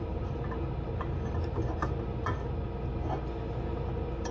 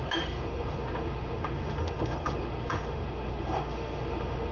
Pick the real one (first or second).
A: first